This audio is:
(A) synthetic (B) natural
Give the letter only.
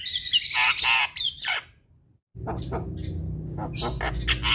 B